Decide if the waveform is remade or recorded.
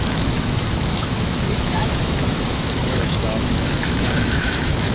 remade